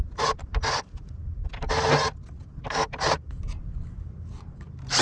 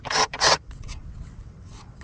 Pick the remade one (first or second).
second